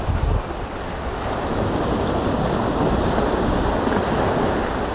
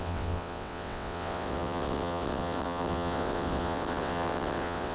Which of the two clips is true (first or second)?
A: first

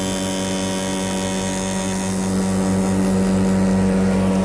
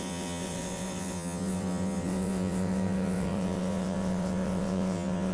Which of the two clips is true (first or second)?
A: first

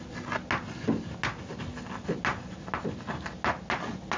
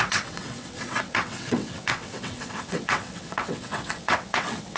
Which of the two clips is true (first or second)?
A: first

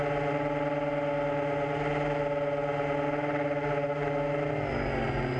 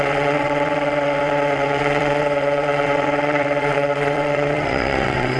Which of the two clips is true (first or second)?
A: first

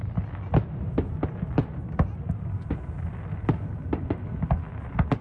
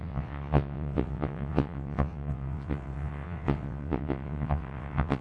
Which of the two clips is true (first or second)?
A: first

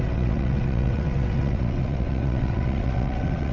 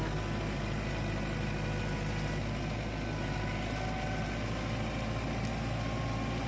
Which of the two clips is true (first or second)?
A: second